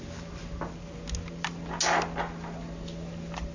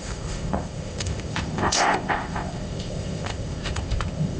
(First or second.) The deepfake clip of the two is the second